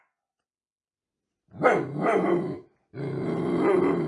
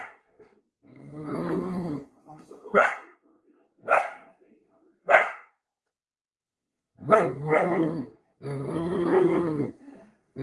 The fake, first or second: second